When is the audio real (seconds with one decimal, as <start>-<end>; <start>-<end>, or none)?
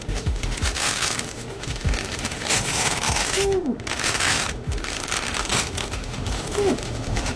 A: none